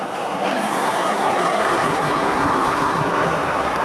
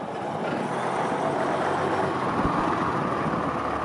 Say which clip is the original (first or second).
second